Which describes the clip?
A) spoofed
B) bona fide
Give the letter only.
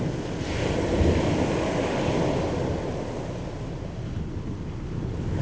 B